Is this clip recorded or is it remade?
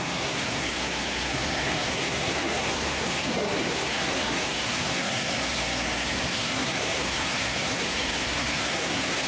remade